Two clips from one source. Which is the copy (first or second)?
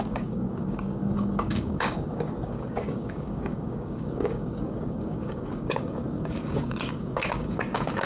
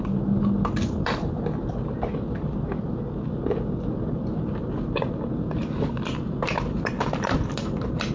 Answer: first